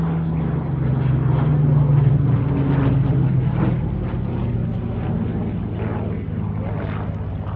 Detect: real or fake real